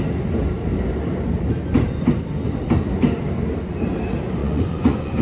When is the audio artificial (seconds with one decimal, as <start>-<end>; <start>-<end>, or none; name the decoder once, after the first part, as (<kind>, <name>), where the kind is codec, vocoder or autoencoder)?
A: 4.4-5.2 (vocoder, Vocos)